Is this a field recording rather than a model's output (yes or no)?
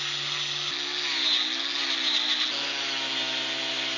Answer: yes